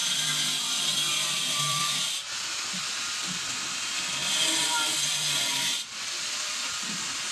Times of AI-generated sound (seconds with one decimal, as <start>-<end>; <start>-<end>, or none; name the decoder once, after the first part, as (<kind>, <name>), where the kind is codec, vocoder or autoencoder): 0.0-2.2 (vocoder, BigVGAN v2); 3.0-7.3